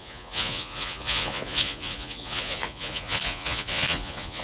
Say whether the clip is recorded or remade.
remade